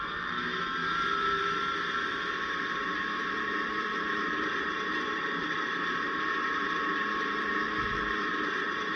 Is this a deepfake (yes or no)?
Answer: yes